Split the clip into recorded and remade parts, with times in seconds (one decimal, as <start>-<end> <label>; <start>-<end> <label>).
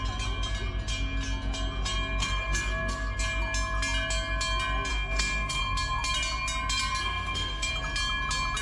0.0-2.2 recorded; 2.2-3.2 remade; 3.2-4.9 recorded; 4.9-5.6 remade; 5.6-7.0 recorded; 7.0-7.7 remade; 7.7-8.6 recorded